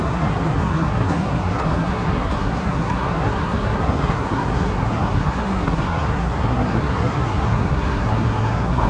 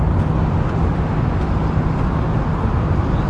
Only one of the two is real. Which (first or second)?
second